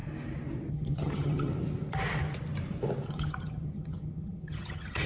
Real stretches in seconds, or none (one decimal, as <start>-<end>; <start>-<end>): 0.0-0.7; 1.5-3.1